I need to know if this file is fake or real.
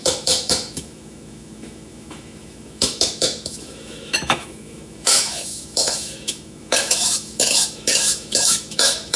fake